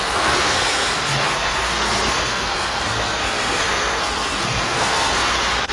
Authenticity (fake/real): fake